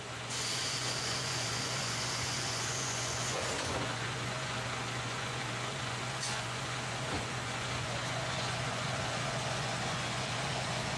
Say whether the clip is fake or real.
fake